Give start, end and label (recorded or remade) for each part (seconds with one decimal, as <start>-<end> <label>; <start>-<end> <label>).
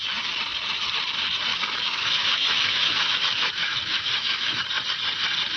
0.0-1.5 recorded; 1.5-4.6 remade; 4.6-5.6 recorded